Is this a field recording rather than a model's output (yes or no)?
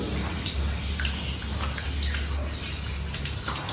yes